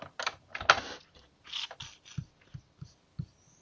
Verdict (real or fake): real